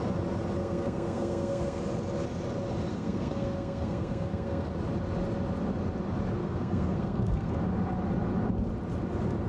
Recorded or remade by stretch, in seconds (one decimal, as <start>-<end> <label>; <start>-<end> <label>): 0.0-0.6 recorded; 0.6-1.8 remade; 1.8-2.9 recorded; 2.9-4.7 remade; 4.7-6.4 recorded; 6.4-7.6 remade; 7.6-9.5 recorded